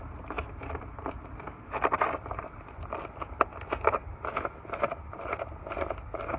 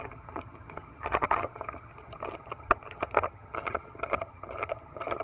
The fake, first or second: second